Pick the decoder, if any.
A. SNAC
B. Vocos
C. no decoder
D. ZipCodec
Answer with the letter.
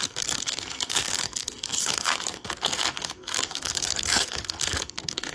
A